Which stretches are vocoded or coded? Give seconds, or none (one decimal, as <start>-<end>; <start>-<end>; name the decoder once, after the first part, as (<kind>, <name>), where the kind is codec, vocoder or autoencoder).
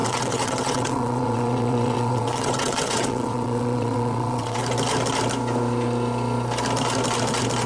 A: 0.0-4.6 (vocoder, WaveNeXt)